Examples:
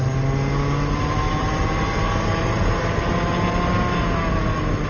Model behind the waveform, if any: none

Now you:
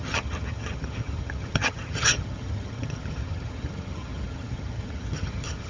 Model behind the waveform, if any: vocoder, HiFi-GAN